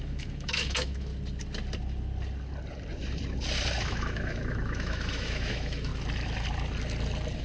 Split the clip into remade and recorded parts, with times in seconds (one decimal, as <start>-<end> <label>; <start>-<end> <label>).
0.0-1.1 remade; 1.1-3.8 recorded; 3.8-5.9 remade; 5.9-7.4 recorded